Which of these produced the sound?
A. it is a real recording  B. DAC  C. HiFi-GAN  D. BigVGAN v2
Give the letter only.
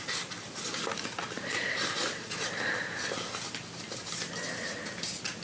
A